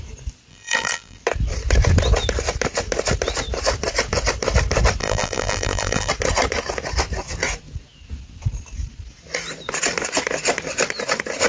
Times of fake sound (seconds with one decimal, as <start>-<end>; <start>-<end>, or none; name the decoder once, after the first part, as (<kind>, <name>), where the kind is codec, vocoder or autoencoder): 0.5-1.2 (vocoder, BigVGAN v2); 5.0-6.1